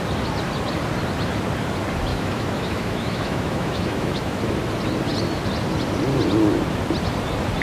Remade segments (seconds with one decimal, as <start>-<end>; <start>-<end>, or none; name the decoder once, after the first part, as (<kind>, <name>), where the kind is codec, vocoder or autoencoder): 2.1-4.4 (autoencoder, DAC-VAE)